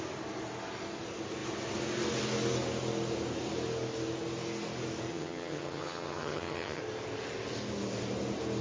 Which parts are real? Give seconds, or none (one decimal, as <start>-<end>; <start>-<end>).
0.0-5.1; 6.8-8.6